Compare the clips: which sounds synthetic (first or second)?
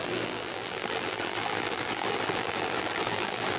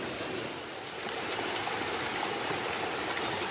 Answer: first